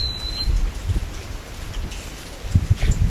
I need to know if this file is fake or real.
real